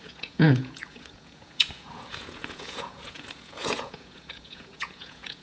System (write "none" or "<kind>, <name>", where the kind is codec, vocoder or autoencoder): vocoder, Vocos